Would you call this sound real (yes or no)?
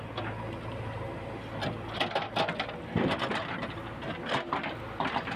yes